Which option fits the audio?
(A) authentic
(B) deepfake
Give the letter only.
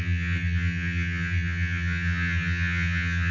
B